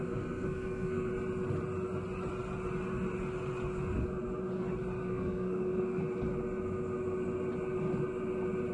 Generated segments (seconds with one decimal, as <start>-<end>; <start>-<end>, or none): 0.0-1.1; 5.0-6.0

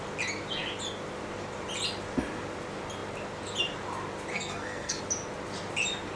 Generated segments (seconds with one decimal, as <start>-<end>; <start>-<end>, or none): 4.3-5.0

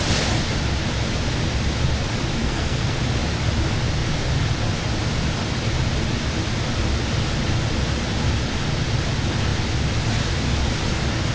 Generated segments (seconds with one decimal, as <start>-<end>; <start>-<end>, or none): 2.4-3.0

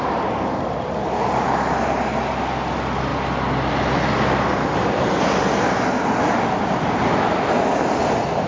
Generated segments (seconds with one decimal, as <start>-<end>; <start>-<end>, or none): none